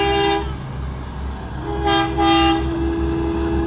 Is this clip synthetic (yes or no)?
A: no